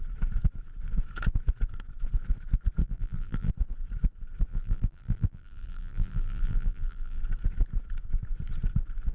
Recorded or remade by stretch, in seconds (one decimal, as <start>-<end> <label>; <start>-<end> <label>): 0.0-2.8 recorded; 2.8-3.5 remade; 3.5-4.5 recorded; 4.5-7.2 remade; 7.2-9.1 recorded